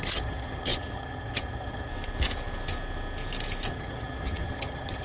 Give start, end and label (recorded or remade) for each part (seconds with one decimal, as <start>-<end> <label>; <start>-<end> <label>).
0.0-1.9 remade; 1.9-3.7 recorded; 3.7-5.0 remade